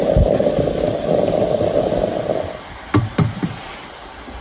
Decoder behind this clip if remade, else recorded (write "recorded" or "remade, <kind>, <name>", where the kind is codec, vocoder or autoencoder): recorded